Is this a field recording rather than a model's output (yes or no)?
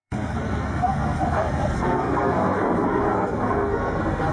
no